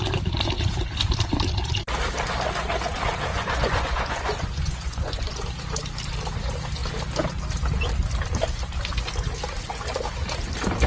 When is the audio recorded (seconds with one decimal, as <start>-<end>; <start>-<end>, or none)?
0.0-3.3; 5.4-10.9